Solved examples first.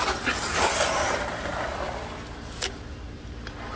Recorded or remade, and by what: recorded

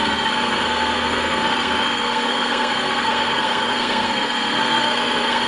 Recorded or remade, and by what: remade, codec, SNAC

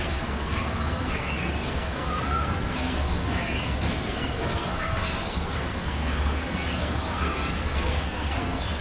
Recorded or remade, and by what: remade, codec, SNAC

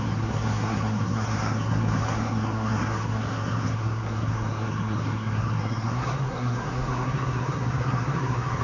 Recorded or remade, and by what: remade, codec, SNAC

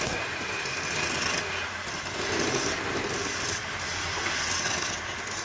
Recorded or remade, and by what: recorded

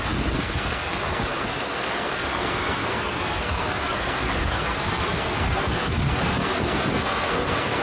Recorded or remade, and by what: remade, codec, SNAC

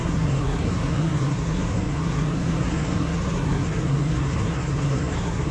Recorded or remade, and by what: remade, codec, SNAC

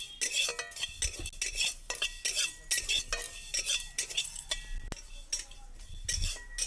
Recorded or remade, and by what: recorded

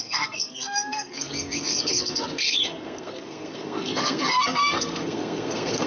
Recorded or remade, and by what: remade, codec, SNAC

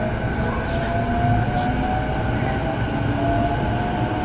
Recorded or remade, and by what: recorded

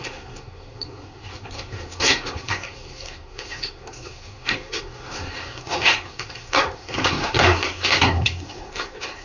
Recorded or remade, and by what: remade, codec, SNAC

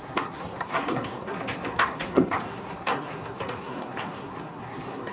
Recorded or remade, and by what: remade, codec, SNAC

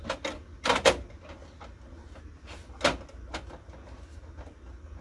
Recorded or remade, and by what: recorded